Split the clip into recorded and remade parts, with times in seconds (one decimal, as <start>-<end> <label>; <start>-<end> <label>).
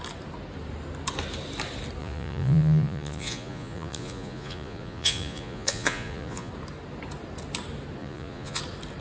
0.0-2.0 recorded; 2.0-6.5 remade; 6.5-8.0 recorded; 8.0-8.6 remade; 8.6-9.0 recorded